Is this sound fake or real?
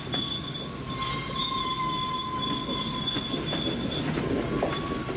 real